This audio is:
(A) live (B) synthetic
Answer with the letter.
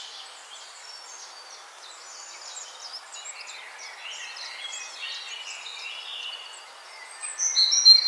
A